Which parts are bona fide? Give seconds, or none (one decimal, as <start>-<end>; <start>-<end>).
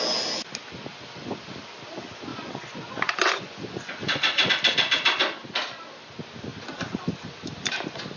0.0-2.3; 4.5-8.2